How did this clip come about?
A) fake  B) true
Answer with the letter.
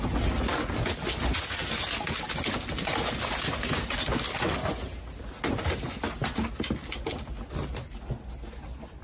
B